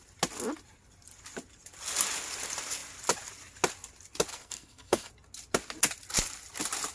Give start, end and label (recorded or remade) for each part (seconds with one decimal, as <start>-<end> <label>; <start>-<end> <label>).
0.0-4.3 recorded; 4.3-5.1 remade; 5.1-6.9 recorded